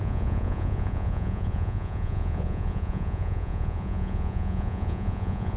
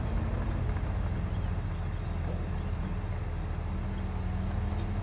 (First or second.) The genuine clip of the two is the second